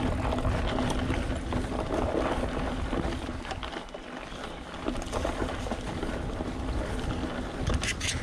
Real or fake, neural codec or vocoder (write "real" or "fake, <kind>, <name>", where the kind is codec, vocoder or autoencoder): real